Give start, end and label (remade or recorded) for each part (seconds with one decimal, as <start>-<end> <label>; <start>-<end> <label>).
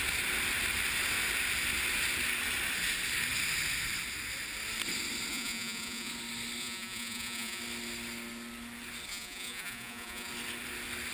0.0-5.3 recorded; 5.3-6.1 remade; 6.1-6.6 recorded; 6.6-7.6 remade; 7.6-9.1 recorded; 9.1-10.3 remade; 10.3-11.1 recorded